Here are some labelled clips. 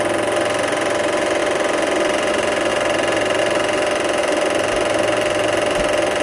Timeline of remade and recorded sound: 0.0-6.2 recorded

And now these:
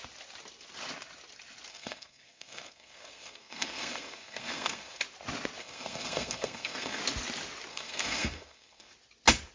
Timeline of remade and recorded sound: 0.0-1.7 recorded; 1.7-5.0 remade; 5.0-5.6 recorded; 5.6-7.0 remade; 7.0-7.7 recorded; 7.7-8.9 remade; 8.9-9.5 recorded

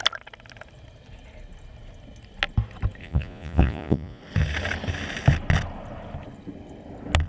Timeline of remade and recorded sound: 0.0-3.0 recorded; 3.0-4.2 remade; 4.2-7.3 recorded

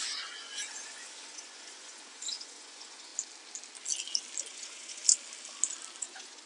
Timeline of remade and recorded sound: 0.0-3.1 remade; 3.1-4.5 recorded; 4.5-5.0 remade; 5.0-6.0 recorded; 6.0-6.5 remade

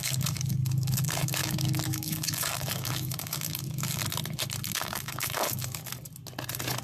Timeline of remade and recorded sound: 0.0-4.0 remade; 4.0-4.7 recorded; 4.7-5.9 remade; 5.9-6.8 recorded

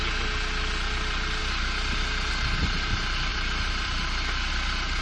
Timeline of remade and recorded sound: 0.0-3.3 recorded; 3.3-4.5 remade; 4.5-5.0 recorded

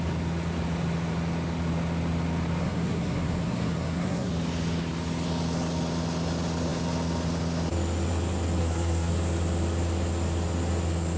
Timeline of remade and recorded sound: 0.0-2.6 recorded; 2.6-4.3 remade; 4.3-8.6 recorded; 8.6-9.1 remade; 9.1-11.2 recorded

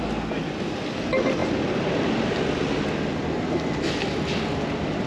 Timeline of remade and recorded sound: 0.0-5.1 recorded